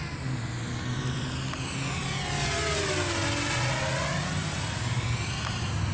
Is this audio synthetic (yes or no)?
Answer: no